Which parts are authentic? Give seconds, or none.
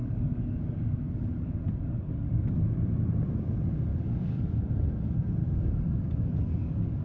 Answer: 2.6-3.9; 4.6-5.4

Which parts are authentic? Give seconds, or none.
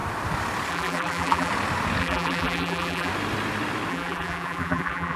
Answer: 0.0-0.7; 1.5-2.0; 3.1-3.9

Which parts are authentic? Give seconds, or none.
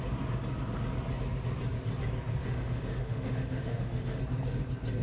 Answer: 0.0-2.4; 4.2-5.0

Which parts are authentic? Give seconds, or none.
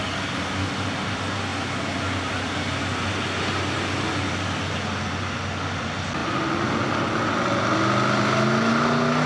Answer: 0.0-9.3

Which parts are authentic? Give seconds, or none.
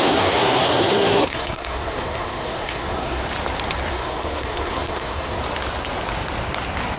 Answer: 3.2-3.9; 5.4-7.0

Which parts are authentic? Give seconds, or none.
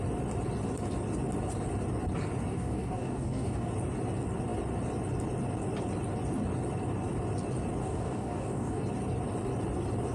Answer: 0.0-2.5; 3.7-7.8; 8.8-10.1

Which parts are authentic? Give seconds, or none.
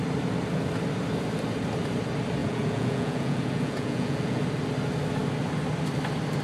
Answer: 0.0-2.4; 4.4-6.4